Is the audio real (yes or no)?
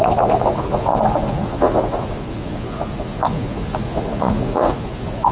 no